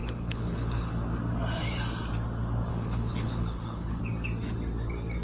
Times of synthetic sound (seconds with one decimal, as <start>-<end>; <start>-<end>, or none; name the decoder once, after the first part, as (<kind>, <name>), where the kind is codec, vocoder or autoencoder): 0.0-0.9 (codec, HILCodec); 2.7-4.0